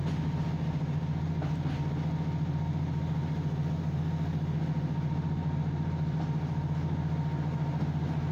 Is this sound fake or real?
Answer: real